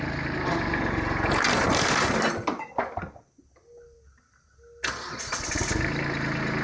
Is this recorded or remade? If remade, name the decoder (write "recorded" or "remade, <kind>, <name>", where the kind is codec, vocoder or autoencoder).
recorded